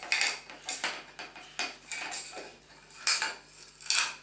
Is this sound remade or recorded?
recorded